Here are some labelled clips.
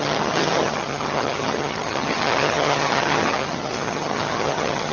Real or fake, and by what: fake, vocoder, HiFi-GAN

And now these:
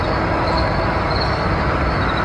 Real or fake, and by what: real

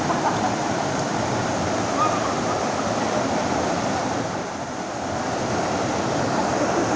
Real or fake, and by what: real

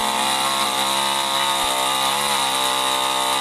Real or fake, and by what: real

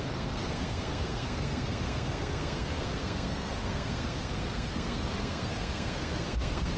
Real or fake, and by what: fake, codec, SNAC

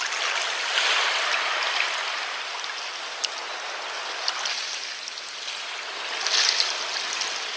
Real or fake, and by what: real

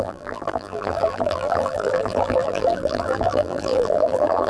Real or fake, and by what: fake, vocoder, BigVGAN v2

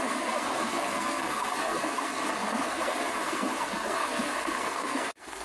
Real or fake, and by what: fake, codec, SNAC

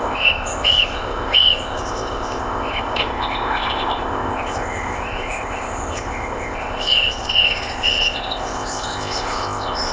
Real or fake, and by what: fake, codec, ZipCodec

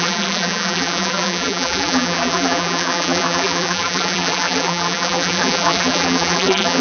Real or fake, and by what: fake, vocoder, BigVGAN v2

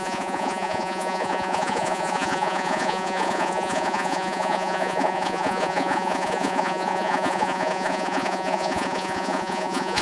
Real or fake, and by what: fake, vocoder, Vocos